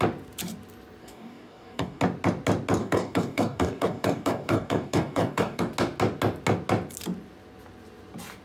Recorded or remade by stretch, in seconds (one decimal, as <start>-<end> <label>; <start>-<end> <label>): 0.0-1.0 recorded; 1.0-2.0 remade; 2.0-2.8 recorded; 2.8-5.6 remade; 5.6-8.4 recorded